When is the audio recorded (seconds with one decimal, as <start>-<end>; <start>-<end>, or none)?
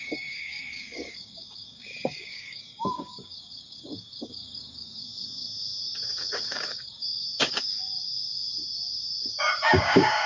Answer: 5.1-5.8